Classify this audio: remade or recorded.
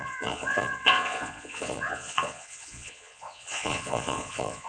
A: remade